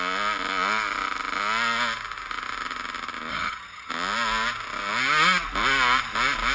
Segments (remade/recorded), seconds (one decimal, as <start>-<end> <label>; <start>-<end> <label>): 0.0-3.3 recorded; 3.3-3.9 remade; 3.9-6.5 recorded